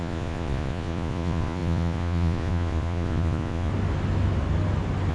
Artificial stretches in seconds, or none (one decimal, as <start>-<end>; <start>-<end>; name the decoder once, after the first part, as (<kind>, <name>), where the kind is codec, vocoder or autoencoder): 0.0-3.7 (vocoder, Vocos)